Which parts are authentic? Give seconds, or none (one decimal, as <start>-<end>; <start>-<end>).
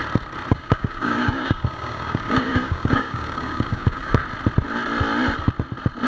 0.0-0.5; 4.2-6.1